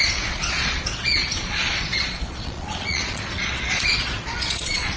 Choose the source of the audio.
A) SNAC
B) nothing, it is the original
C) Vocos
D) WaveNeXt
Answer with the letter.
C